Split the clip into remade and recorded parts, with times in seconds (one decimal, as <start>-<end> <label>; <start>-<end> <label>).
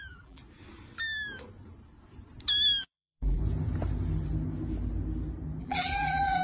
0.0-0.4 remade; 0.4-2.8 recorded; 2.8-3.4 remade; 3.4-5.6 recorded; 5.6-6.4 remade